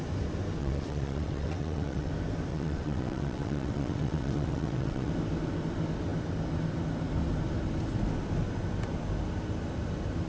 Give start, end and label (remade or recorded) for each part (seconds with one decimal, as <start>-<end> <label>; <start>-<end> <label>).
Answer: 0.0-0.6 recorded; 0.6-2.1 remade; 2.1-2.5 recorded; 2.5-5.1 remade; 5.1-10.3 recorded